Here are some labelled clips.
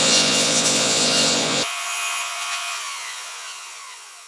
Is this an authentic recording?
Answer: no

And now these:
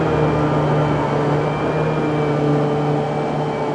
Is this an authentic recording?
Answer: yes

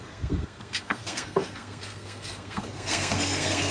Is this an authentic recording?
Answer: no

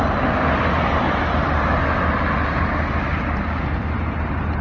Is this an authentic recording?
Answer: no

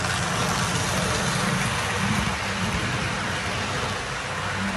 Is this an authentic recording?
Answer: yes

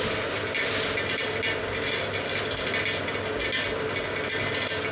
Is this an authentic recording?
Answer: yes